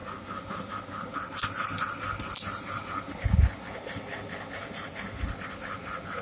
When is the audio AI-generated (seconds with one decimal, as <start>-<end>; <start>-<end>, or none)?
none